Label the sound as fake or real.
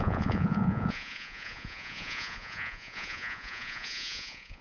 fake